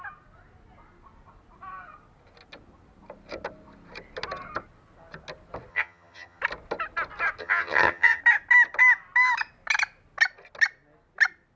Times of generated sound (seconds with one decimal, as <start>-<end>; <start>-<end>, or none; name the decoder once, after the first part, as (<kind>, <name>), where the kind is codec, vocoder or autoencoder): 5.7-6.4 (vocoder, HiFi-GAN); 7.4-8.2